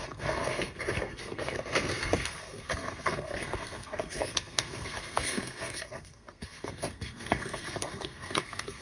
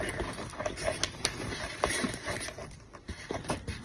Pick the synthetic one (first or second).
first